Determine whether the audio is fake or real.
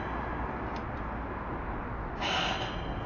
real